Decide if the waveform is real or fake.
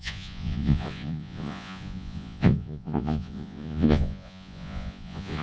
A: fake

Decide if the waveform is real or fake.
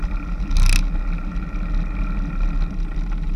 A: real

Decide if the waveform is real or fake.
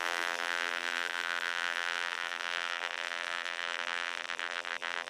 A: fake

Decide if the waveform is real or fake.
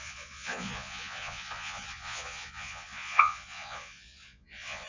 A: fake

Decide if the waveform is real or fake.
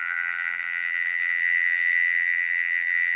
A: fake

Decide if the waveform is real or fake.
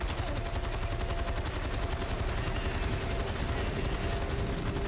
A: real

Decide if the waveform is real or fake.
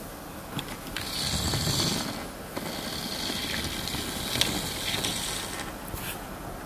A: real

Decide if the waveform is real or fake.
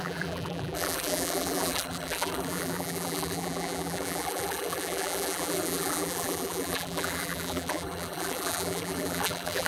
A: fake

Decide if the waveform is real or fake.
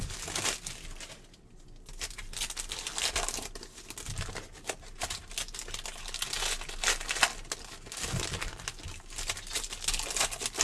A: real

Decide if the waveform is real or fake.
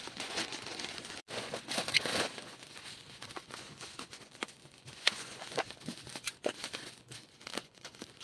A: fake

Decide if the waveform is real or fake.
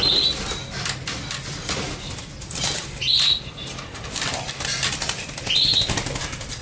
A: real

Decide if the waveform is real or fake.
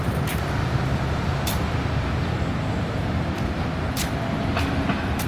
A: real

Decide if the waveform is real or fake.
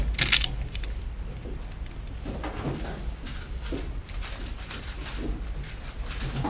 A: real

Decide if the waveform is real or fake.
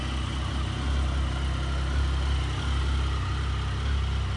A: real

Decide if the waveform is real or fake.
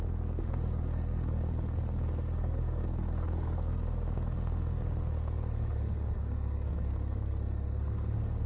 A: fake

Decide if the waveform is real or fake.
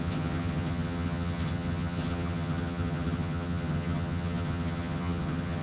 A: fake